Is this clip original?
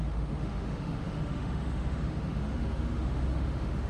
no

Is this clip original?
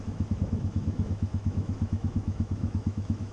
no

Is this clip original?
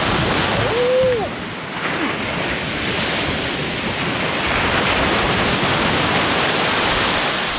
yes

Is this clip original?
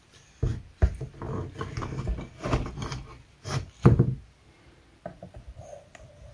yes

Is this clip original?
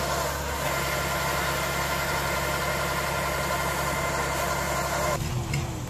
yes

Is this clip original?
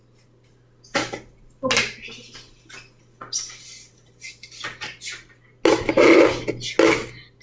yes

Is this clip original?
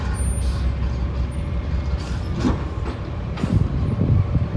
yes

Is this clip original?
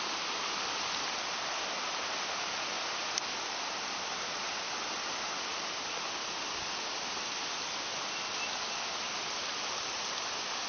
yes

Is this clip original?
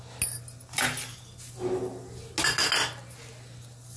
yes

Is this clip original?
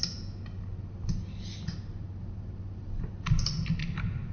yes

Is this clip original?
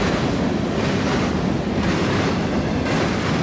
yes